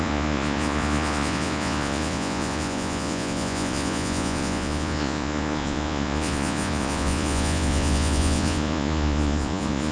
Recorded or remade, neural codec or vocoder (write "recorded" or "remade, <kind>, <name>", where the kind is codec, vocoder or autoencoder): remade, vocoder, Vocos